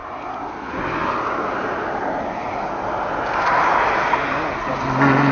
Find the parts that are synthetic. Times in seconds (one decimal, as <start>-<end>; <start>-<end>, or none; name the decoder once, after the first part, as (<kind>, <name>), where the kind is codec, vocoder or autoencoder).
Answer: none